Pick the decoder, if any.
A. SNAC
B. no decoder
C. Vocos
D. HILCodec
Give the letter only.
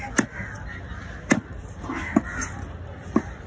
B